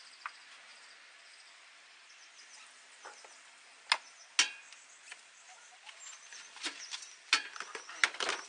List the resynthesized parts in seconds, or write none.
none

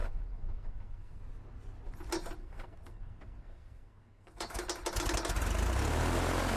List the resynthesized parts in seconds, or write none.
0.0-1.2 (codec, SNAC); 2.4-4.6

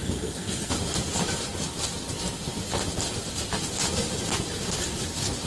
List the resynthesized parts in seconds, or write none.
0.0-0.7 (codec, SNAC)

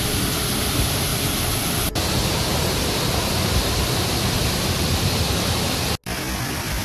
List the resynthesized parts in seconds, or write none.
none